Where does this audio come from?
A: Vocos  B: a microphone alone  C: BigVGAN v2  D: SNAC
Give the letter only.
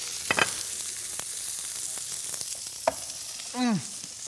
B